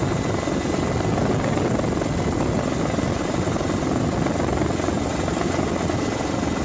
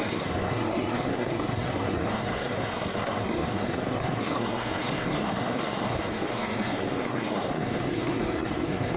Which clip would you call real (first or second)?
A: first